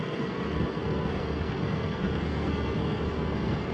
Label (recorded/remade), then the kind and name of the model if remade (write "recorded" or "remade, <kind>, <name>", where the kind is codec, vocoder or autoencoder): remade, codec, SNAC